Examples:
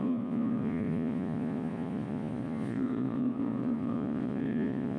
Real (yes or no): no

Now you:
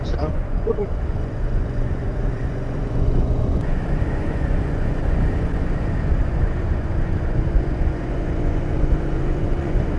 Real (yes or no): no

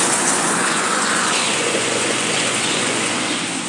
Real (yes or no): no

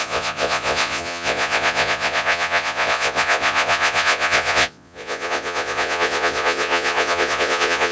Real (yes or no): no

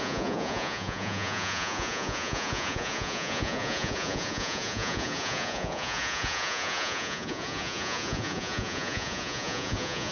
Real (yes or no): no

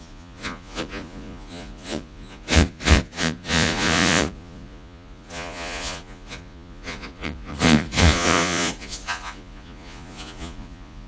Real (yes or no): no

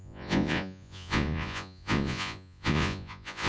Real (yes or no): no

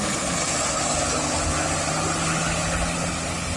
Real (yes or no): yes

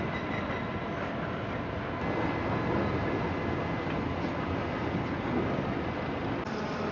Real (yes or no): yes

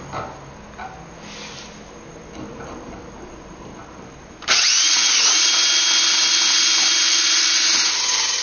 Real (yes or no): yes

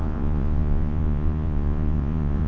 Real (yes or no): no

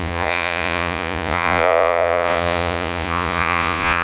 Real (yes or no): no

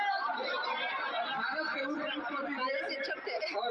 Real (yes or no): yes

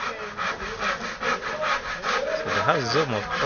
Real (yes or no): yes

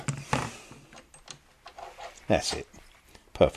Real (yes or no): yes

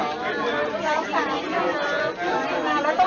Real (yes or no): yes